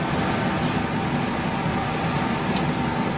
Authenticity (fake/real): real